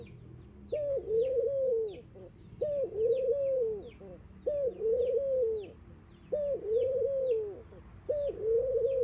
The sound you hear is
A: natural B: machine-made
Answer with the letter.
A